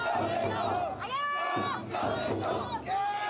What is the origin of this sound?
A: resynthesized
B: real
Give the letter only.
B